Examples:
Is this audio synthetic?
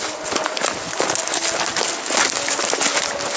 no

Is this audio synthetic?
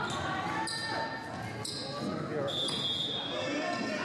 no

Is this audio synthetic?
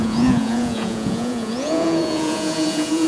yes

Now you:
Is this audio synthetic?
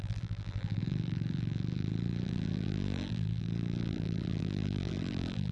yes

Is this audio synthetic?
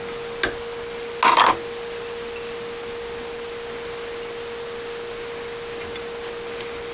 no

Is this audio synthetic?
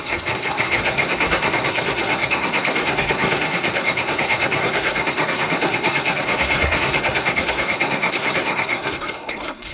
yes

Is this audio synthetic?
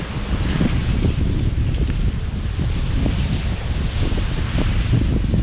no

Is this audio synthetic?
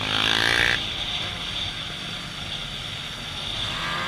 no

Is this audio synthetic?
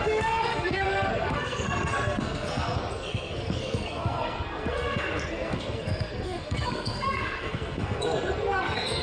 yes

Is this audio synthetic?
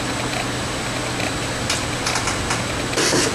no